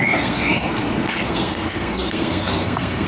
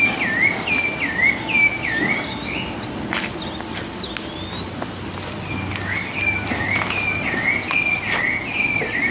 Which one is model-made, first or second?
first